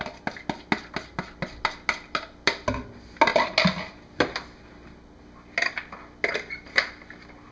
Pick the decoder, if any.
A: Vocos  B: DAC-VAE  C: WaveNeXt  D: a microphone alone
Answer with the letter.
D